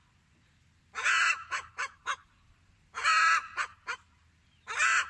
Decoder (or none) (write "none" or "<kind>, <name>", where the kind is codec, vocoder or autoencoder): none